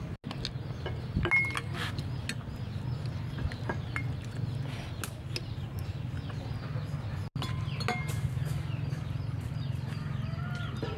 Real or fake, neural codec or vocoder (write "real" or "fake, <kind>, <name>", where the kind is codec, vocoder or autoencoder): real